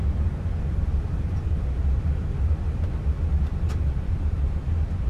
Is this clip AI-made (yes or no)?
yes